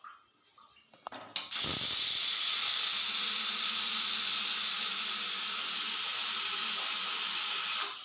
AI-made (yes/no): no